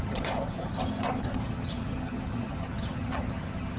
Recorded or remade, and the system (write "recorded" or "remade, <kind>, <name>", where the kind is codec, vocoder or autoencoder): remade, vocoder, HiFi-GAN